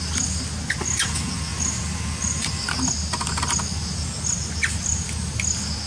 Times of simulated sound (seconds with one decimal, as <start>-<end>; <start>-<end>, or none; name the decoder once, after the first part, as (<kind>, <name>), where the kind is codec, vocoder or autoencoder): none